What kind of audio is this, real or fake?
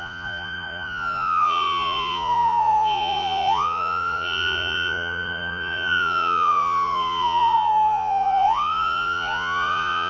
fake